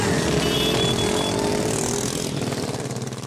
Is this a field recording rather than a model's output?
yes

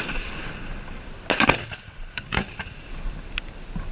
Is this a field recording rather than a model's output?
yes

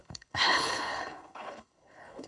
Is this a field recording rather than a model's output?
no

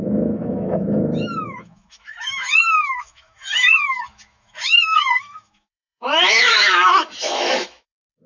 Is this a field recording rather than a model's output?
no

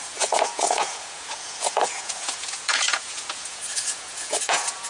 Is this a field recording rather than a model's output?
no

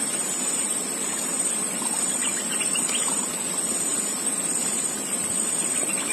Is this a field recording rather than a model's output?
yes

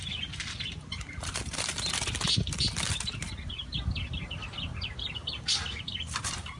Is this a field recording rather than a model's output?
no